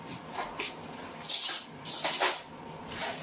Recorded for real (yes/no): yes